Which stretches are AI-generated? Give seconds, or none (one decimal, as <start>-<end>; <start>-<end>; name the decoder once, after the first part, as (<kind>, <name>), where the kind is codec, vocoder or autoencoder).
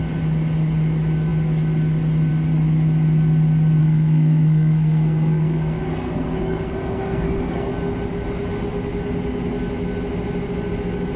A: 3.8-7.7 (codec, SNAC)